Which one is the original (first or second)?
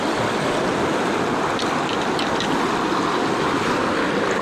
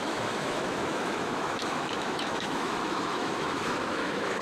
first